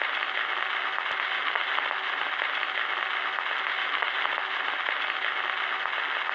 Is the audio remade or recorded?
recorded